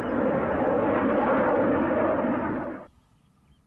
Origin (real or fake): real